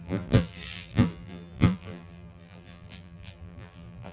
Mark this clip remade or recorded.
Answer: remade